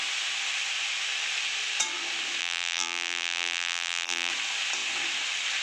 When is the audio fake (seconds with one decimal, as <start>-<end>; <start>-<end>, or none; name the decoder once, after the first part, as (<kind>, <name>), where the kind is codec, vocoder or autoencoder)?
2.4-4.3 (vocoder, BigVGAN v2)